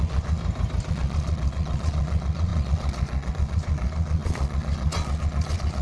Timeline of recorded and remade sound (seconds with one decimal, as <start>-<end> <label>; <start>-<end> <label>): 0.0-0.4 remade; 0.4-0.9 recorded; 0.9-5.8 remade